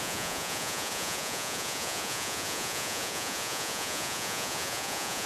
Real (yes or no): no